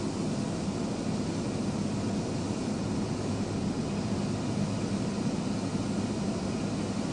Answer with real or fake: real